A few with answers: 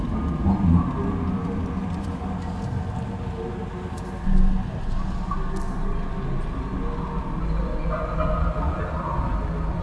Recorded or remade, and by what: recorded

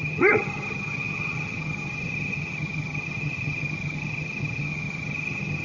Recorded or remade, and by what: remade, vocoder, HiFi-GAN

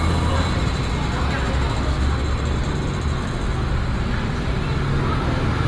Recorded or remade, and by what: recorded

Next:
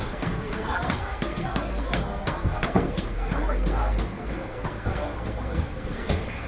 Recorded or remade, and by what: remade, codec, SNAC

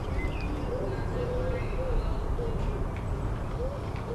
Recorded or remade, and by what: recorded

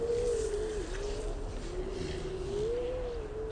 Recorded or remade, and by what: recorded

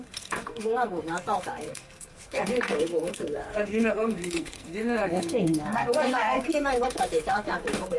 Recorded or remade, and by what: remade, codec, SNAC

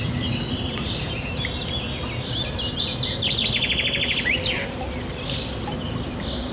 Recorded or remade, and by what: recorded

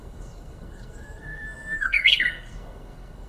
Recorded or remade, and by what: remade, codec, SNAC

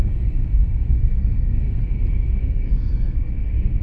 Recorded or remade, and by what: remade, codec, SNAC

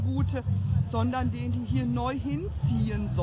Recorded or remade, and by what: recorded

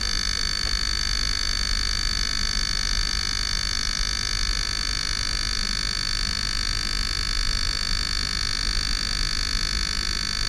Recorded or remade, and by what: recorded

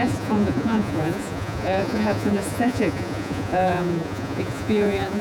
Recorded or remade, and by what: remade, vocoder, Vocos